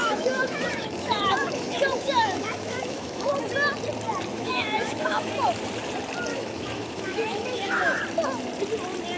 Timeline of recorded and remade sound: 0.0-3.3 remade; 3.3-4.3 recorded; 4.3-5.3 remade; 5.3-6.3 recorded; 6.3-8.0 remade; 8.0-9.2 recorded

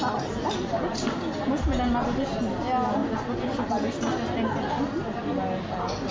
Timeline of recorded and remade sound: 0.0-6.1 recorded

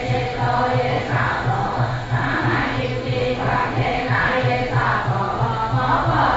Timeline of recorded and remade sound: 0.0-0.9 recorded; 0.9-2.8 remade; 2.8-3.2 recorded; 3.2-4.5 remade; 4.5-6.4 recorded

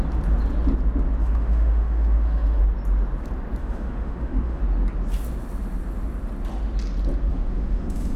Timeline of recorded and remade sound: 0.0-1.2 recorded; 1.2-2.6 remade; 2.6-3.6 recorded; 3.6-4.6 remade; 4.6-7.3 recorded; 7.3-8.2 remade

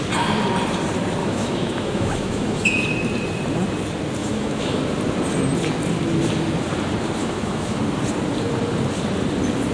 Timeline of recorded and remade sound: 0.0-1.2 recorded; 1.2-2.8 remade; 2.8-4.2 recorded; 4.2-4.8 remade; 4.8-7.2 recorded; 7.2-7.8 remade; 7.8-9.7 recorded

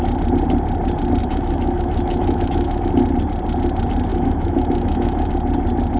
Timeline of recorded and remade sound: 0.0-1.2 recorded; 1.2-2.9 remade; 2.9-4.1 recorded; 4.1-5.3 remade; 5.3-6.0 recorded

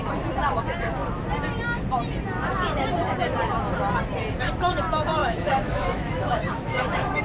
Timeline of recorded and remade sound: 0.0-5.2 recorded; 5.2-7.2 remade